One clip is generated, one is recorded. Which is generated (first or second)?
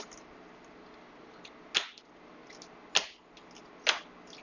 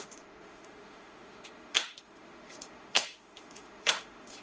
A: second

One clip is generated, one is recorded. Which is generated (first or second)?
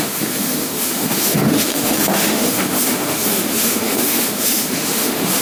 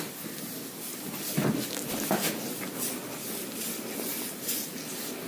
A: first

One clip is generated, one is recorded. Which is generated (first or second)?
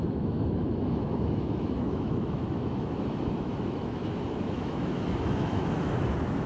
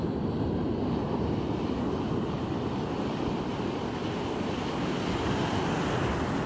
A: first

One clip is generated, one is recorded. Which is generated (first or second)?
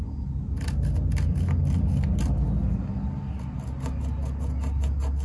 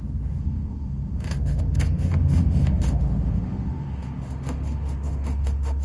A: second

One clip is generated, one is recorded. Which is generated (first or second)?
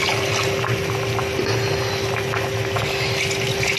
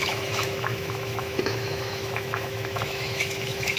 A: second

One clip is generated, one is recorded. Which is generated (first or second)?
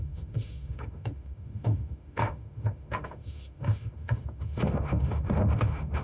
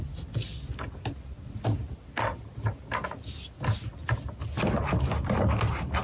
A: first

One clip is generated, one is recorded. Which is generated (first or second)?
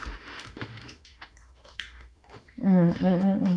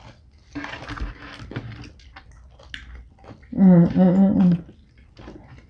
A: first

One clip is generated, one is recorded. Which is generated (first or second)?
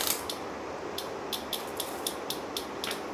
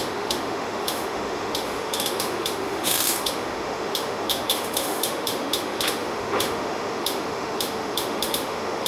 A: second